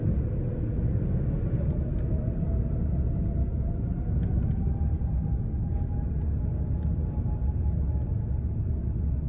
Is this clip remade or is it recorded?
recorded